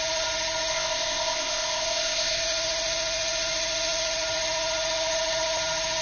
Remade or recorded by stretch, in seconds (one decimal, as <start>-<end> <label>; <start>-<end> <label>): 0.0-0.7 recorded; 0.7-2.4 remade; 2.4-6.0 recorded